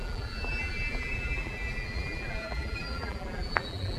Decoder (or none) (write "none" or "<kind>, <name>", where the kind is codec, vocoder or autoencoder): vocoder, BigVGAN v2